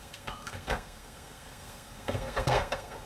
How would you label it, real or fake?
fake